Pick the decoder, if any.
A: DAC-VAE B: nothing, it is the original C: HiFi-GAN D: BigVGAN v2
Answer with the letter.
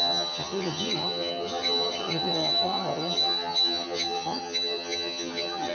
C